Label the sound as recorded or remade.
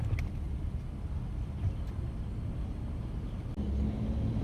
recorded